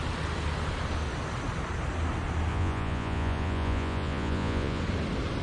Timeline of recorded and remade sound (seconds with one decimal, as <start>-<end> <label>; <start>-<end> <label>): 0.0-2.5 recorded; 2.5-4.8 remade; 4.8-5.4 recorded

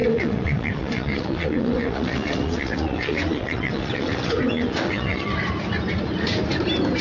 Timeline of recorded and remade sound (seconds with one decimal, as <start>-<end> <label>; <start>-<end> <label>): 0.0-5.3 remade; 5.3-7.0 recorded

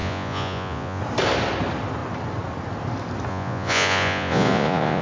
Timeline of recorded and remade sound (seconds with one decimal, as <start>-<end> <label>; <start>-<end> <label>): 0.0-1.0 remade; 1.0-3.3 recorded; 3.3-5.0 remade

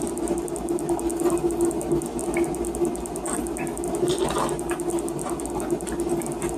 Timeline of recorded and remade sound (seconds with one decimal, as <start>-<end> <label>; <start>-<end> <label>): 0.0-2.2 remade; 2.2-4.9 recorded; 4.9-6.6 remade

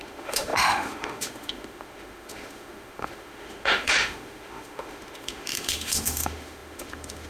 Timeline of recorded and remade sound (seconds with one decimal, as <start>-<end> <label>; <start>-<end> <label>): 0.0-7.3 remade

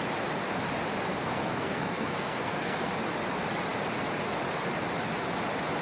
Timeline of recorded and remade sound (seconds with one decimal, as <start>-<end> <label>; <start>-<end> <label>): 0.0-1.1 recorded; 1.1-2.9 remade; 2.9-5.8 recorded